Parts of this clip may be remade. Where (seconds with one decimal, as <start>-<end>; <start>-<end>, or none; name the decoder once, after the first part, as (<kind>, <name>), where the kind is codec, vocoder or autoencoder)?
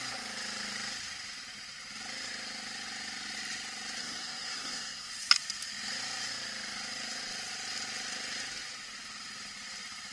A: 4.0-5.1 (codec, SNAC)